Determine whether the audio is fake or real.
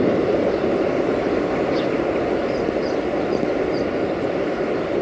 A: real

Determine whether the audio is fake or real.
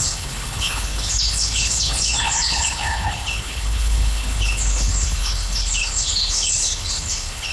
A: fake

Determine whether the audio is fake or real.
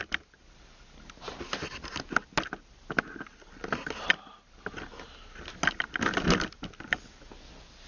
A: real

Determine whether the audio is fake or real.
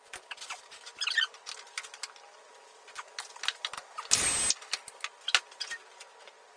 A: real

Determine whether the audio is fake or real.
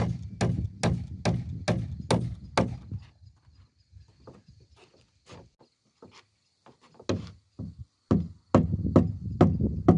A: real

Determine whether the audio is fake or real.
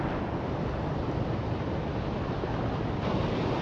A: real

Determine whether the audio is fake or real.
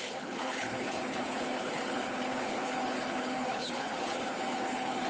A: fake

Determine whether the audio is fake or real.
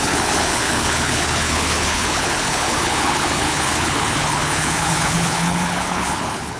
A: fake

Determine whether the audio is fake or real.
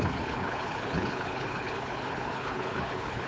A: fake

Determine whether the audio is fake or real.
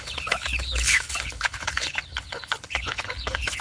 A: fake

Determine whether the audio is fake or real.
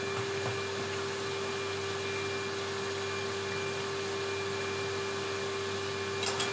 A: real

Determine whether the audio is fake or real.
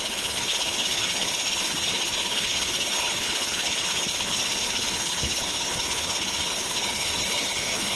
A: fake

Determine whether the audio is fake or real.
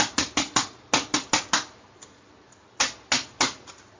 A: real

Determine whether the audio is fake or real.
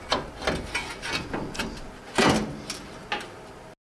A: real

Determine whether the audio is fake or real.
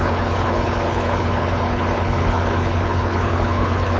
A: fake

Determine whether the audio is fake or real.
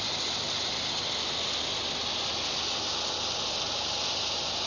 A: real